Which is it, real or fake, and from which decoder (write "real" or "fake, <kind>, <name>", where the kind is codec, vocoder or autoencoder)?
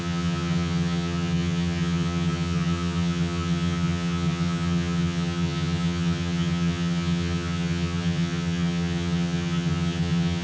fake, vocoder, HiFi-GAN